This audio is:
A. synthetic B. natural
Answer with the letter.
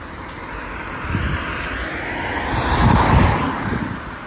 B